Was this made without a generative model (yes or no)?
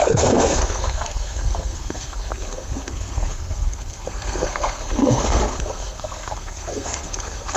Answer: no